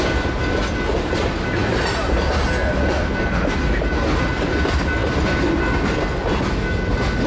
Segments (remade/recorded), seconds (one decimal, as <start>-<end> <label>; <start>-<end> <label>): 0.0-7.3 recorded